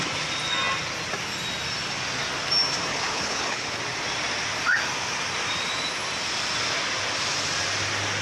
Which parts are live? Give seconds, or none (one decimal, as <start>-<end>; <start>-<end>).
0.0-2.9; 3.8-8.2